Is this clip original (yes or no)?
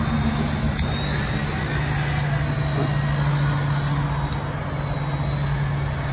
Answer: yes